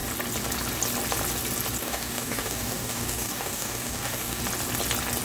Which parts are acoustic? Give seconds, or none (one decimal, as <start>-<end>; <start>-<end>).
0.0-1.8; 4.4-5.2